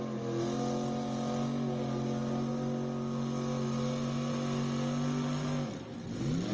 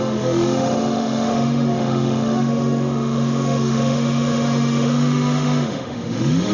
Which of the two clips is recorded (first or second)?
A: first